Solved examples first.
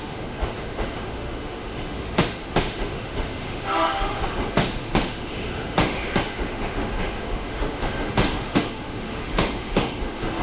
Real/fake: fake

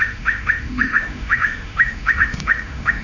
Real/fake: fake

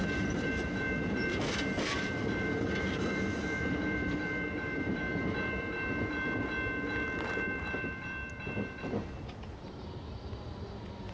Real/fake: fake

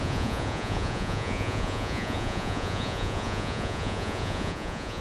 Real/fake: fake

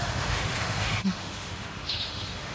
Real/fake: fake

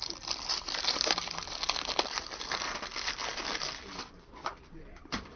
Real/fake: fake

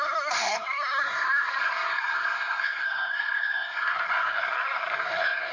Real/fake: fake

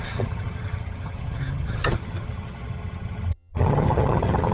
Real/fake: fake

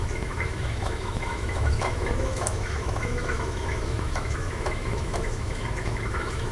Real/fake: fake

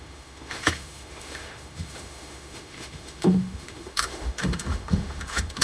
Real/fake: fake